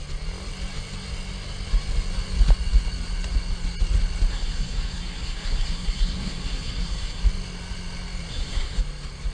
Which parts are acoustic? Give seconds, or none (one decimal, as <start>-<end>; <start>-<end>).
0.0-4.3; 7.2-8.3; 8.8-9.3